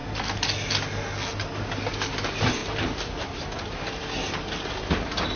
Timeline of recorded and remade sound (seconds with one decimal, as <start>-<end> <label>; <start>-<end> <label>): 0.0-5.4 recorded